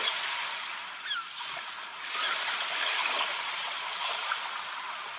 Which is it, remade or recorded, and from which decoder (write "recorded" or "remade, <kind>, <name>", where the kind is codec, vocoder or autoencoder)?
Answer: recorded